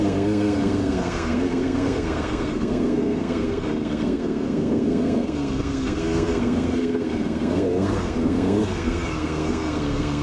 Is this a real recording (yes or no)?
no